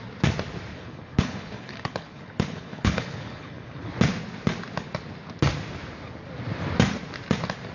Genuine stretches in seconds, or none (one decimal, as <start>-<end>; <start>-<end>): 0.0-0.7; 3.9-7.7